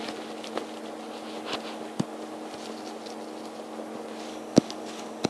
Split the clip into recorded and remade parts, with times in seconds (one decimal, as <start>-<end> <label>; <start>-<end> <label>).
0.0-4.3 recorded; 4.3-5.3 remade